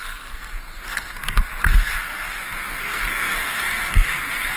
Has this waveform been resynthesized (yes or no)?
yes